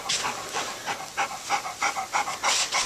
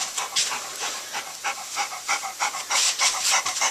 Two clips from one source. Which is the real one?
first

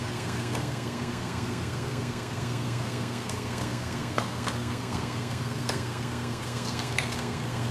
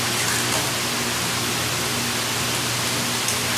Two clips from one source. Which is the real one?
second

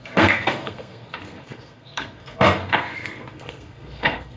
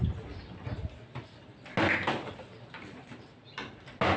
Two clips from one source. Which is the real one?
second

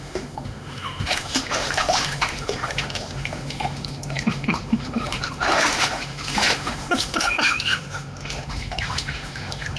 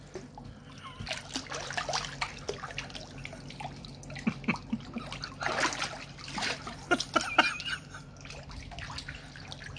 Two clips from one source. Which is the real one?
second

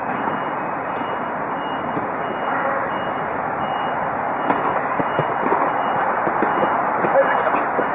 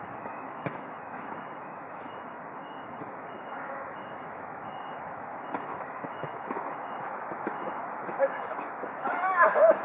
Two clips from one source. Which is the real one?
first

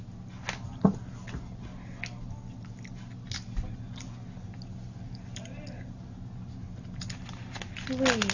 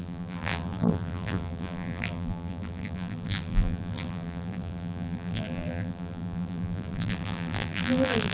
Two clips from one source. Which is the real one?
first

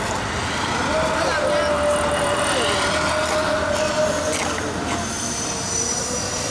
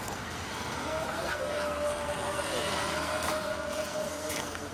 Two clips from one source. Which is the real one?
first